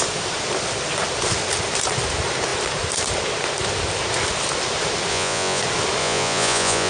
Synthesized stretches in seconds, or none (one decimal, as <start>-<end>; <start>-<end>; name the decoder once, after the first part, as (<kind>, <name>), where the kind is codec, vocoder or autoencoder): 5.1-5.6 (vocoder, Vocos); 6.0-6.9